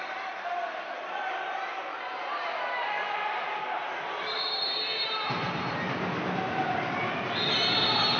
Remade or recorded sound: recorded